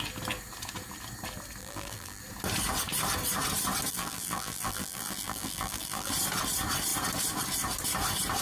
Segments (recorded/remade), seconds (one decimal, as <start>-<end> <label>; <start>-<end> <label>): 0.0-1.6 recorded; 1.6-2.2 remade; 2.2-3.9 recorded; 3.9-6.1 remade; 6.1-8.4 recorded